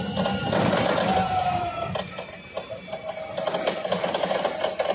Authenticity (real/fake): real